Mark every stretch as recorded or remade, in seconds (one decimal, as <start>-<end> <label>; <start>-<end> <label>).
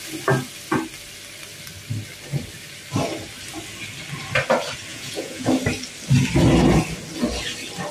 0.0-4.9 recorded; 4.9-5.5 remade; 5.5-7.9 recorded